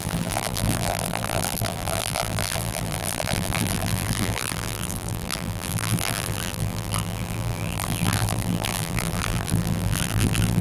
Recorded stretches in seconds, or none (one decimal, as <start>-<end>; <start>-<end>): none